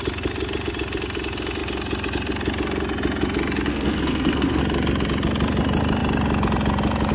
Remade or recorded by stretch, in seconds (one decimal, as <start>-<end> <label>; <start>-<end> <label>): 0.0-3.7 recorded; 3.7-4.6 remade; 4.6-7.1 recorded